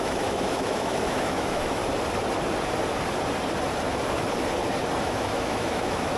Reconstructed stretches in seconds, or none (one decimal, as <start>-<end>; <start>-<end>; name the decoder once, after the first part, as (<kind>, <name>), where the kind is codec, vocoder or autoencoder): 0.0-1.8 (autoencoder, DAC-VAE); 5.0-6.2